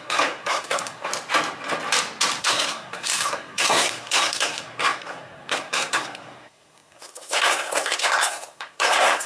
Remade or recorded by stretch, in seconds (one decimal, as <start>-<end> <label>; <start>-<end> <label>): 0.0-1.1 remade; 1.1-2.4 recorded; 2.4-9.3 remade